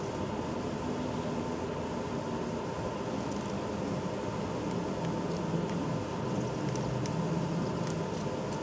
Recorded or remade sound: recorded